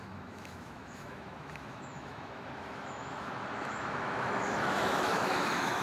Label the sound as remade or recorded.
remade